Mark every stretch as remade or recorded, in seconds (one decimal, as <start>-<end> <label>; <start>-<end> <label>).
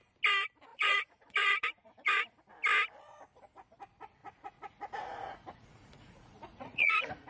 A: 0.0-0.7 recorded; 0.7-2.2 remade; 2.2-4.2 recorded; 4.2-7.3 remade